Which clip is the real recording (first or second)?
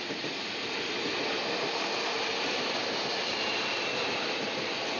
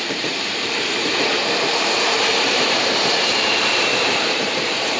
first